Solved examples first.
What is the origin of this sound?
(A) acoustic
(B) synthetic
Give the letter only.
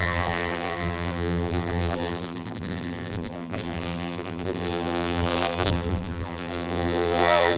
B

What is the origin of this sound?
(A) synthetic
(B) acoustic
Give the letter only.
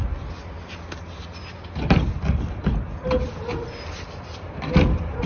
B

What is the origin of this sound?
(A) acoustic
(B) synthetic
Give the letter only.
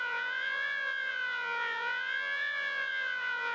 B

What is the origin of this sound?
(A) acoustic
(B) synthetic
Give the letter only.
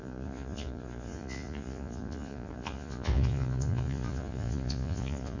B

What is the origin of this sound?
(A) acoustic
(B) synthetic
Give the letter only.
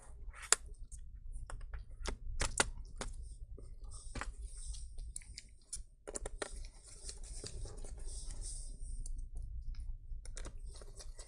A